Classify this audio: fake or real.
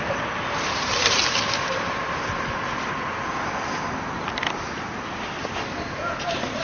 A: real